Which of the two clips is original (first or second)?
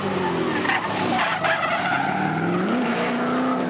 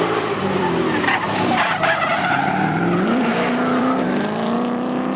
first